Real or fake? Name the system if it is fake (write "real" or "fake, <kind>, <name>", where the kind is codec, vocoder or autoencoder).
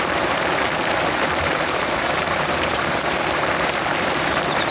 fake, vocoder, BigVGAN v2